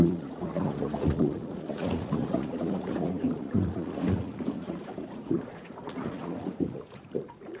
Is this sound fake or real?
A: fake